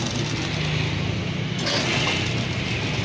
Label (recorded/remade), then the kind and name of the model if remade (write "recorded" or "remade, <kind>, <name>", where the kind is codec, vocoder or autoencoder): recorded